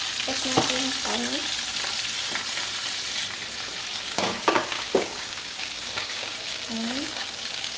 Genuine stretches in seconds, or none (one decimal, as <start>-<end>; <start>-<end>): 0.0-3.9